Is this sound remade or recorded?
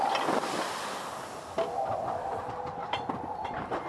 recorded